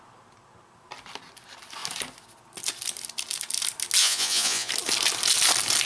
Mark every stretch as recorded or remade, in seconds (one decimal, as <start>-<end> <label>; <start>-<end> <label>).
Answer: 0.0-4.0 recorded; 4.0-4.7 remade; 4.7-5.9 recorded